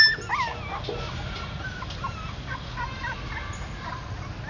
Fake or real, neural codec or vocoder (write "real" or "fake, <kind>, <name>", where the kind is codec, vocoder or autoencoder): real